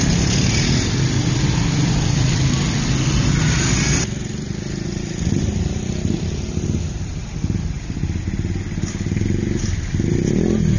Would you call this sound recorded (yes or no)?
yes